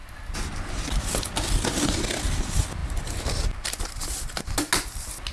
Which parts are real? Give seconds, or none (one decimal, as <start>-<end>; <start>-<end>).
0.0-5.3